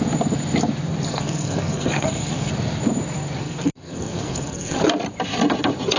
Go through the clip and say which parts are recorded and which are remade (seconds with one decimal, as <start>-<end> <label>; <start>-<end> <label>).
0.0-1.1 recorded; 1.1-2.5 remade; 2.5-3.4 recorded; 3.4-4.8 remade; 4.8-6.0 recorded